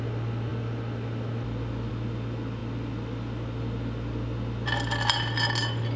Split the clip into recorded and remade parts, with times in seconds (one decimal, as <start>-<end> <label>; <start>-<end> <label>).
0.0-6.0 recorded